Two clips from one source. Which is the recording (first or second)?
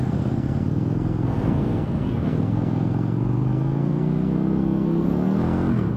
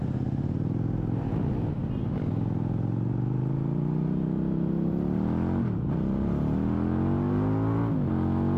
second